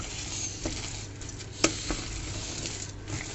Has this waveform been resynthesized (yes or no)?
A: no